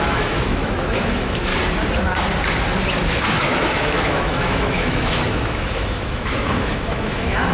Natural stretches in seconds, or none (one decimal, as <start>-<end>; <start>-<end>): 1.5-3.2